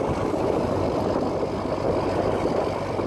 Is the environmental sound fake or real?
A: real